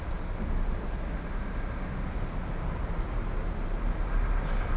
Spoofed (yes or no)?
no